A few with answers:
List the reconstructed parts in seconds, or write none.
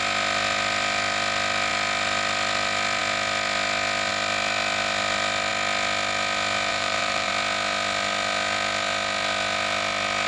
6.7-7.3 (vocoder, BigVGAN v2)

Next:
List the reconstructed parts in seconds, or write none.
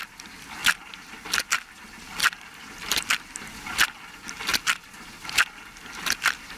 4.5-5.1 (vocoder, BigVGAN v2)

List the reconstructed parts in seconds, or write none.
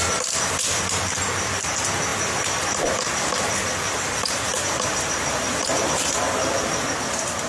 0.0-7.5 (vocoder, BigVGAN v2)